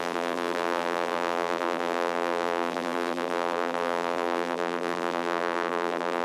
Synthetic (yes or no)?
yes